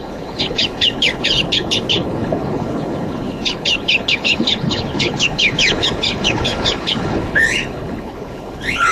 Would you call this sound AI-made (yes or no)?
yes